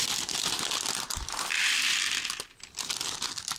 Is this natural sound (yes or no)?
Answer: yes